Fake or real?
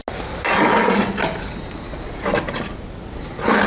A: real